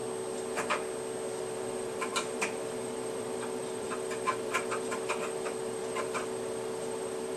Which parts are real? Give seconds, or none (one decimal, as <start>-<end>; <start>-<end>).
0.0-1.4